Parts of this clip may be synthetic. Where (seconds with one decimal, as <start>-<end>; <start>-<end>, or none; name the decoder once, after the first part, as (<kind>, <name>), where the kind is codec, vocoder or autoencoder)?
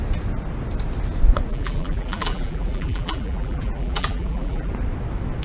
1.5-4.7 (vocoder, BigVGAN v2)